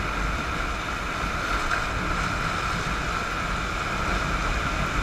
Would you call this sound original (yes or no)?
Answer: yes